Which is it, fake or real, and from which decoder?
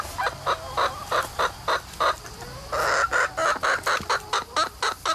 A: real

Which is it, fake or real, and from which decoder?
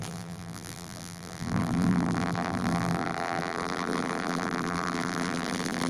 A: fake, vocoder, BigVGAN v2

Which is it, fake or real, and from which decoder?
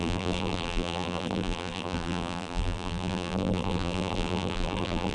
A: fake, vocoder, BigVGAN v2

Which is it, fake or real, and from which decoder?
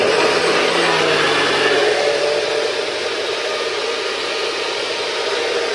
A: real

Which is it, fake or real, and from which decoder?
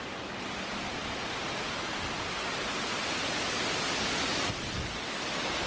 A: real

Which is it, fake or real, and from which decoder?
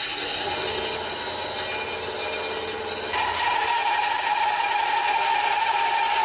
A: real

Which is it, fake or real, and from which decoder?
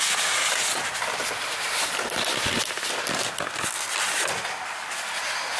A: real